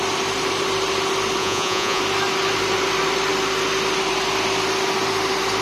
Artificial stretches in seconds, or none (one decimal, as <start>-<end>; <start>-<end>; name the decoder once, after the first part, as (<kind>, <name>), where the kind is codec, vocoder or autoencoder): 1.4-2.0 (vocoder, Vocos)

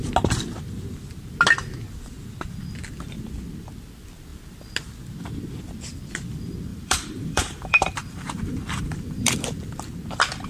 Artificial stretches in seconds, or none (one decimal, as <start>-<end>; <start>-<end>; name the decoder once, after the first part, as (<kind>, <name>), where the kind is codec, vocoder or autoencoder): 6.7-9.3 (vocoder, BigVGAN v2)

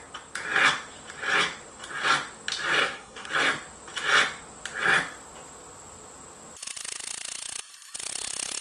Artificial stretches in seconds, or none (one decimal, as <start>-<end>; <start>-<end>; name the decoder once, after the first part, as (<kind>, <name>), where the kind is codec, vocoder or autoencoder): 2.8-3.3 (codec, SNAC)

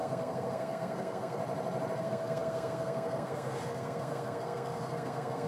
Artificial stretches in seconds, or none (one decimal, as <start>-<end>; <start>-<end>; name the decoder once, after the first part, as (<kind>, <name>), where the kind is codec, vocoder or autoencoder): 0.0-1.4 (codec, SNAC); 2.0-5.5

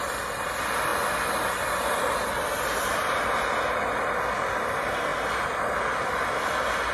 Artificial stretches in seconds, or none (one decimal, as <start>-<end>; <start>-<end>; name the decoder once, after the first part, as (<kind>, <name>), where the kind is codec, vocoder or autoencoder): none

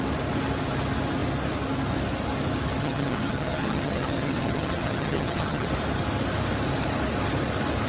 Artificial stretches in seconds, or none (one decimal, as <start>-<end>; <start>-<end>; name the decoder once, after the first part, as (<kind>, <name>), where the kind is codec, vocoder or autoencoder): 2.8-5.7 (vocoder, HiFi-GAN)

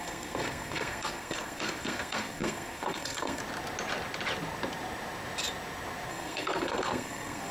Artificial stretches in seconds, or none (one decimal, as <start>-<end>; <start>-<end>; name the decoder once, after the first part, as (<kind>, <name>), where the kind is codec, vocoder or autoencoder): 0.0-3.4 (codec, SNAC); 6.1-7.5

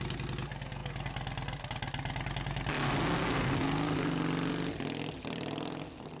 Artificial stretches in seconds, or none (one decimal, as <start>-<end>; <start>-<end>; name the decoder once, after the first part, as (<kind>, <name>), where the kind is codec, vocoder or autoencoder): none